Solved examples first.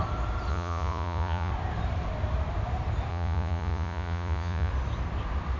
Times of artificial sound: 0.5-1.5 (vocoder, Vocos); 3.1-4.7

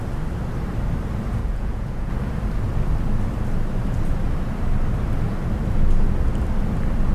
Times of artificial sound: 1.4-2.1 (vocoder, Vocos)

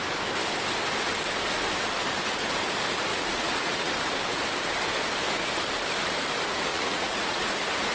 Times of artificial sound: 3.1-3.9 (vocoder, Vocos); 6.7-7.5